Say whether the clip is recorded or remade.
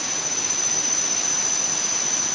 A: recorded